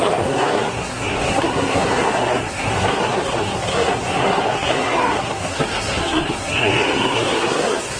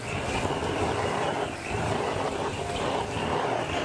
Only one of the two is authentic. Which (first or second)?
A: second